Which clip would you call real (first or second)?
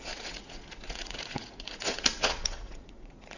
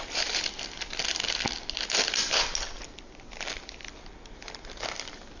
second